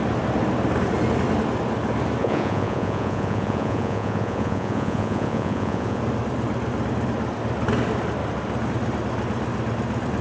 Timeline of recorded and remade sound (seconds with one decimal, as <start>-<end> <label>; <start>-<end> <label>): 0.0-2.2 recorded; 2.2-6.0 remade; 6.0-10.2 recorded